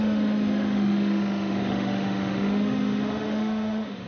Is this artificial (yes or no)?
yes